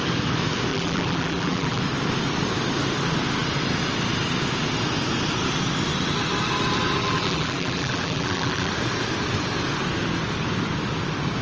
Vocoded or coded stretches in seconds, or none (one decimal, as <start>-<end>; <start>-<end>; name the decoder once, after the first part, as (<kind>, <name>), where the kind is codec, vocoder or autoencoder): 0.7-1.8 (vocoder, BigVGAN v2); 7.0-8.7